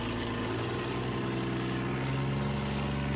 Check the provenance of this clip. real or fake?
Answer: real